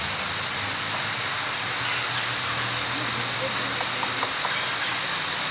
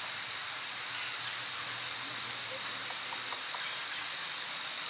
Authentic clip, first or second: first